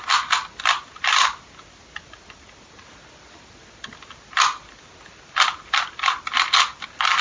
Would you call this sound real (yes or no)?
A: yes